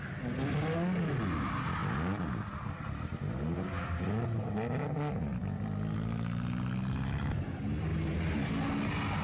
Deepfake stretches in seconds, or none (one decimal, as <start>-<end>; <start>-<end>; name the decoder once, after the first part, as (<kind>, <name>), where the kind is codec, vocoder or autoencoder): 7.9-8.5 (vocoder, BigVGAN v2)